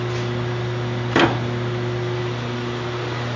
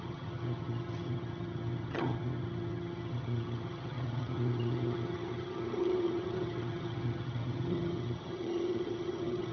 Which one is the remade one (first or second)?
second